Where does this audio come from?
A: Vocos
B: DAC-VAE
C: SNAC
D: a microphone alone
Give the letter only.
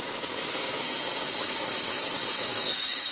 B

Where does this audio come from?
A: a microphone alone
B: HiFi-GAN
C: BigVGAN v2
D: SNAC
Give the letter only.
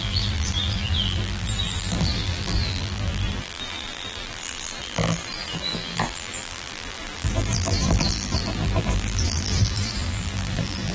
C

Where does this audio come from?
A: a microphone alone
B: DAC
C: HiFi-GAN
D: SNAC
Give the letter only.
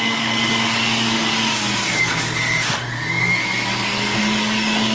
B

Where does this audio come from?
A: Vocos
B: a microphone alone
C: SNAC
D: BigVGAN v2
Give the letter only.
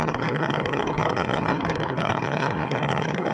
C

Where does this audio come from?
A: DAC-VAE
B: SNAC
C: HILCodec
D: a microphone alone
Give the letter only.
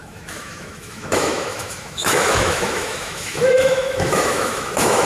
A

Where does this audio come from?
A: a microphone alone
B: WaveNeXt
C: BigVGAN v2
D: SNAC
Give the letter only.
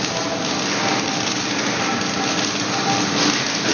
A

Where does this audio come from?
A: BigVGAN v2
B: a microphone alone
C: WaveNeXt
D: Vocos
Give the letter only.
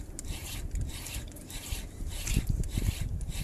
A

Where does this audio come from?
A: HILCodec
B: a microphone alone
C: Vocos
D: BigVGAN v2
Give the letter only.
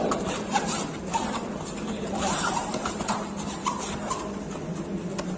B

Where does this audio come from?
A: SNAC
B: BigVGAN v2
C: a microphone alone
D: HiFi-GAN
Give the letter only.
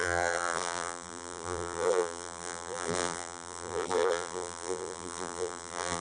B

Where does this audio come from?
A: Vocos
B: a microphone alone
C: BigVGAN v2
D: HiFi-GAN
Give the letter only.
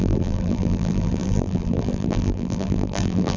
C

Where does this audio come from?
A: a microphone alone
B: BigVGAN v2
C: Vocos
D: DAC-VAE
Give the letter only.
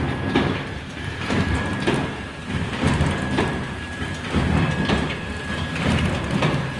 B